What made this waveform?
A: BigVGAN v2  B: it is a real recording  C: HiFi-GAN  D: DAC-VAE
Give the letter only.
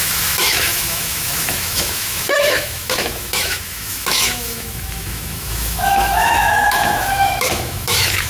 D